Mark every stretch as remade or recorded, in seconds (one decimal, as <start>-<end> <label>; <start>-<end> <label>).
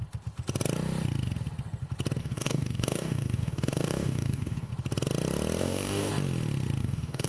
0.0-2.2 recorded; 2.2-4.7 remade; 4.7-5.6 recorded; 5.6-6.1 remade; 6.1-6.8 recorded; 6.8-7.3 remade